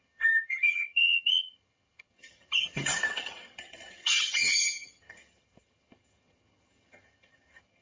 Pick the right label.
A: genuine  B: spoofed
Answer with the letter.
B